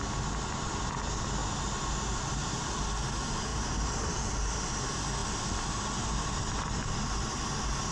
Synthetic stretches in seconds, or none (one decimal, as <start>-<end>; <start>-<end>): none